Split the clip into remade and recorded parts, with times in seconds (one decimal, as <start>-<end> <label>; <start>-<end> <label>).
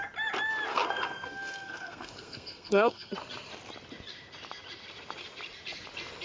0.0-0.7 recorded; 0.7-3.1 remade; 3.1-6.2 recorded